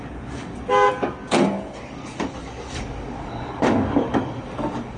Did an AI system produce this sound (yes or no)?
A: yes